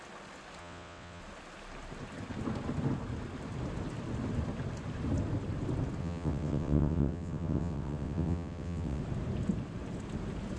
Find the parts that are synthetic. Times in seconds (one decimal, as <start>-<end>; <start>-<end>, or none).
0.6-1.2; 6.0-9.0